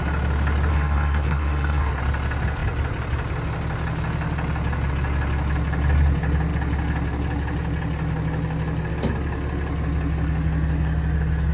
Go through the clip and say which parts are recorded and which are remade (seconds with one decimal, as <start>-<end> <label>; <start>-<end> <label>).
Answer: 0.0-0.7 recorded; 0.7-2.0 remade; 2.0-11.5 recorded